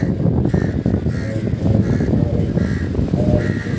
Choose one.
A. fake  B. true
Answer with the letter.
B